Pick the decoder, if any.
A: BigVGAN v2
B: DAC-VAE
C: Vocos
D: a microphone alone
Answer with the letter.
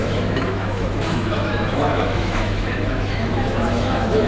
B